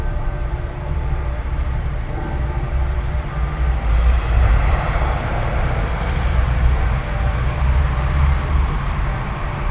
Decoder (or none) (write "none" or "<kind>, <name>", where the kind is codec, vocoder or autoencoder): vocoder, BigVGAN v2